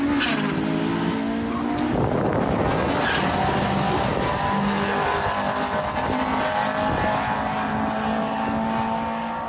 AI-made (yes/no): no